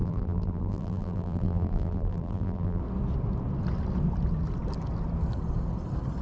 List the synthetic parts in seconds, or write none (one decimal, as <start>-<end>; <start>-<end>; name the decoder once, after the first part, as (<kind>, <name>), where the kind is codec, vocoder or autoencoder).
0.0-2.8 (vocoder, BigVGAN v2)